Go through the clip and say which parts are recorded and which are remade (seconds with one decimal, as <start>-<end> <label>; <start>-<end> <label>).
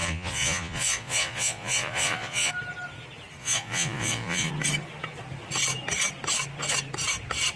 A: 0.0-2.5 remade; 2.5-3.4 recorded; 3.4-4.5 remade; 4.5-7.6 recorded